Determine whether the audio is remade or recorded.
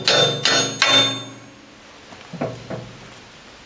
recorded